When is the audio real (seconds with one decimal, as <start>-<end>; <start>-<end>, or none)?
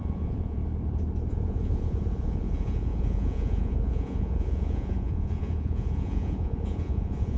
0.6-1.3